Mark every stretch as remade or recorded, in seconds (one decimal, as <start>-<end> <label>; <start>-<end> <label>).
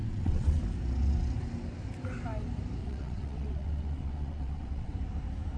0.0-0.6 remade; 0.6-2.8 recorded; 2.8-4.9 remade; 4.9-5.6 recorded